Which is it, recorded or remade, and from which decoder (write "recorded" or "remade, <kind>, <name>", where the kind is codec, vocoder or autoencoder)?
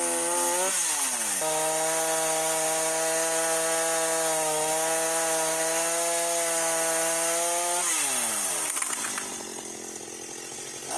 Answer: recorded